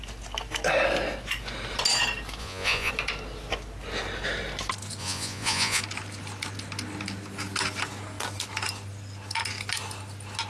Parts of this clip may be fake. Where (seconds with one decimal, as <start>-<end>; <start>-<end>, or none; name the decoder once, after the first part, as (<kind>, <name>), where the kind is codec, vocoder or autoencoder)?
2.4-2.9 (vocoder, Vocos); 5.0-5.8